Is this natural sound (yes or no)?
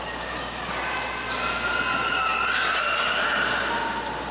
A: yes